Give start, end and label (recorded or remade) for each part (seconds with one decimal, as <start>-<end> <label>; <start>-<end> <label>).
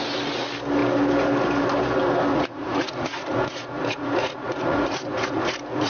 0.0-2.3 recorded; 2.3-5.9 remade